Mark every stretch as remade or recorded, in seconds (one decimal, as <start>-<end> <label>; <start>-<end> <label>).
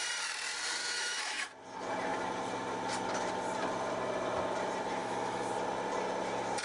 0.0-0.8 recorded; 0.8-1.5 remade; 1.5-5.0 recorded; 5.0-5.5 remade; 5.5-6.6 recorded